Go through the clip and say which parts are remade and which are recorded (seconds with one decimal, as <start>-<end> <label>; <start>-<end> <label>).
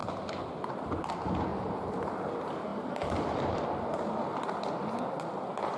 0.0-1.5 recorded; 1.5-2.1 remade; 2.1-2.7 recorded; 2.7-3.6 remade; 3.6-5.8 recorded